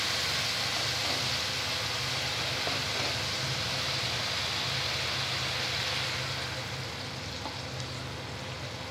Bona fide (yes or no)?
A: yes